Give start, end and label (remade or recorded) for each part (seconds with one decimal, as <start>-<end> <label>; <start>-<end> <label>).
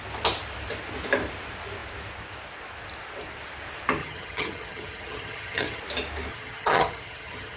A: 0.0-4.0 recorded; 4.0-5.8 remade; 5.8-6.3 recorded; 6.3-7.6 remade